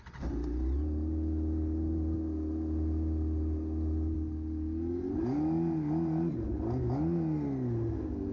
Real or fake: real